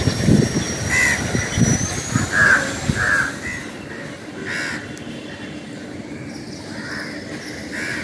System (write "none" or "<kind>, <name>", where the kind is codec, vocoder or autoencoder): none